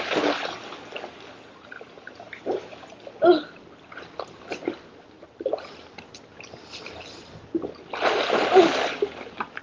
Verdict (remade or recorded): recorded